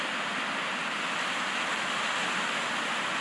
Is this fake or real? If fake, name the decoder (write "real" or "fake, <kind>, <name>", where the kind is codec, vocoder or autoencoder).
real